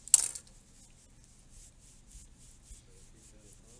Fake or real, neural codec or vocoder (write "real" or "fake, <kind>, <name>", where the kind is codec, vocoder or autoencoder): real